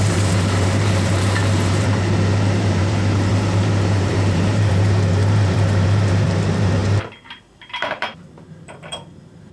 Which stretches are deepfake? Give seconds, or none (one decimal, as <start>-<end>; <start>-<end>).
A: 0.0-9.5